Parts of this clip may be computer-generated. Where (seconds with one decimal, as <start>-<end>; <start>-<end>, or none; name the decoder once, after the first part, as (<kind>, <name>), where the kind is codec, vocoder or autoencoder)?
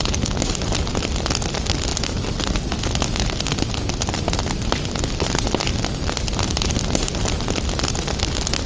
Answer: none